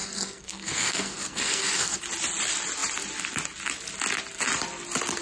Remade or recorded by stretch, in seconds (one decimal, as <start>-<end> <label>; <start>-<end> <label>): 0.0-2.0 remade; 2.0-5.2 recorded